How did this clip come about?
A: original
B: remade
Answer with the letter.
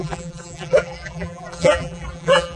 B